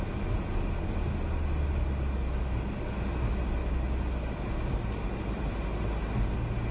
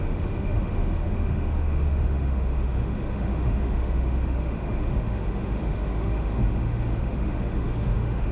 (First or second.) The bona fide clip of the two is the first